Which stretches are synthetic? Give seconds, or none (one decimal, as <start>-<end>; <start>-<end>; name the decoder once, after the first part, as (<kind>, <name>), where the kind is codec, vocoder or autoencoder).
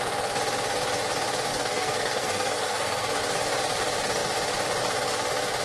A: 1.5-3.2 (codec, SNAC)